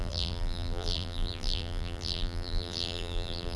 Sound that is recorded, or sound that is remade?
remade